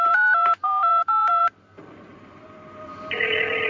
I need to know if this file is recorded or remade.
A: remade